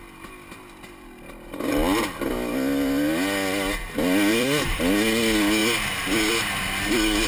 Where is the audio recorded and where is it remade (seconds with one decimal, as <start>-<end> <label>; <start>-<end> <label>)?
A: 0.0-4.3 recorded; 4.3-4.8 remade; 4.8-7.3 recorded